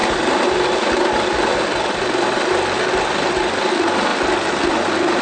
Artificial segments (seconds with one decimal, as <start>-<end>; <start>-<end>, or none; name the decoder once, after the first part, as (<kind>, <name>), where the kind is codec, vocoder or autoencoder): 0.0-2.4 (vocoder, BigVGAN v2)

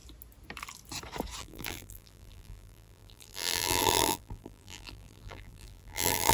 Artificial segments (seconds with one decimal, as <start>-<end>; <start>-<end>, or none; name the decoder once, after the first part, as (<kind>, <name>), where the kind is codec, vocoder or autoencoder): 1.4-6.3 (vocoder, BigVGAN v2)

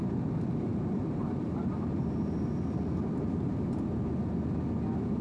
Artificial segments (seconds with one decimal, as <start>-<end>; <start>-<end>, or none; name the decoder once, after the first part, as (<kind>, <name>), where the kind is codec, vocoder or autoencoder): 0.7-3.8 (vocoder, BigVGAN v2)

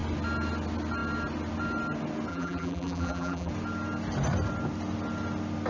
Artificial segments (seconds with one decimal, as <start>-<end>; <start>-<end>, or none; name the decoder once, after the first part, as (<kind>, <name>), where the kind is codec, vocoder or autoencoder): 2.3-3.5 (vocoder, BigVGAN v2)

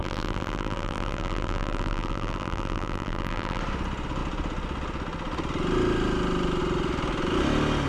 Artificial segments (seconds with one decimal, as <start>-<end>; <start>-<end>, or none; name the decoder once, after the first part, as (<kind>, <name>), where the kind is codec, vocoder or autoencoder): 0.0-3.6 (vocoder, BigVGAN v2)

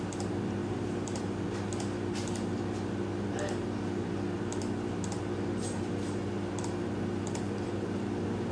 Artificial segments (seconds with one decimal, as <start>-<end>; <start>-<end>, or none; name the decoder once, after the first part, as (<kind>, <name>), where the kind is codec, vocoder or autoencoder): 0.6-1.2 (vocoder, BigVGAN v2)

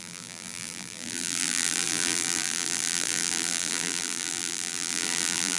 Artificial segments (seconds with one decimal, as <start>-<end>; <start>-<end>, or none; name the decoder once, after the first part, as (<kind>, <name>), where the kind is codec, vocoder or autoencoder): 0.0-5.6 (vocoder, BigVGAN v2)